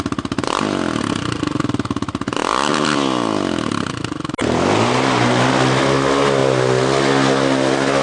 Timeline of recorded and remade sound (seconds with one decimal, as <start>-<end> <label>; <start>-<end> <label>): 0.0-8.0 recorded